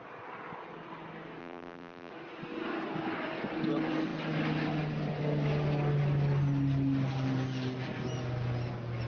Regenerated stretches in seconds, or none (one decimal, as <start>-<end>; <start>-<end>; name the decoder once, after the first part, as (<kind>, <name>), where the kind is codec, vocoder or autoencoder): 1.4-2.1 (vocoder, BigVGAN v2)